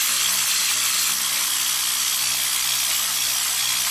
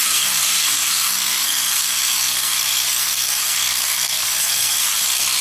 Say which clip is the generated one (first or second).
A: second